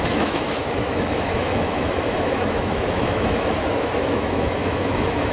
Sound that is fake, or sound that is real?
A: fake